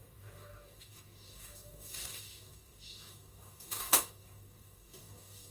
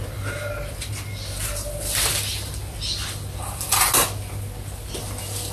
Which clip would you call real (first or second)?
second